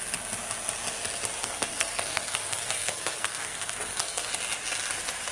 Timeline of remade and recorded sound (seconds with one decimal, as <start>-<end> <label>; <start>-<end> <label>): 0.0-1.4 recorded; 1.4-4.3 remade; 4.3-5.3 recorded